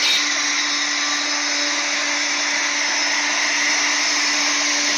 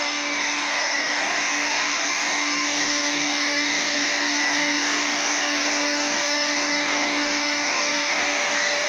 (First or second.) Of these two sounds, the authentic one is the first